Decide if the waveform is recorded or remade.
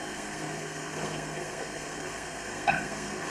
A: remade